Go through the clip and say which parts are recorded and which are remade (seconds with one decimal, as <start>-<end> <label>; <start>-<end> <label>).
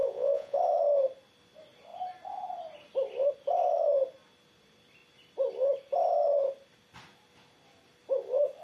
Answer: 0.0-0.6 remade; 0.6-8.6 recorded